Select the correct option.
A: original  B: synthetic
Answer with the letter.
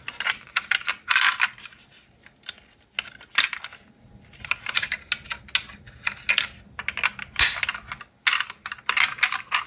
A